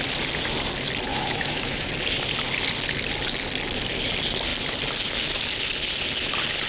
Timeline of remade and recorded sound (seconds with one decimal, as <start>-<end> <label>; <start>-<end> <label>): 0.0-1.1 recorded; 1.1-1.9 remade; 1.9-6.7 recorded